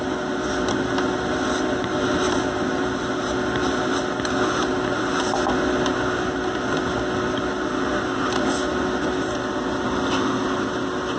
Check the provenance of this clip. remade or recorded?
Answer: recorded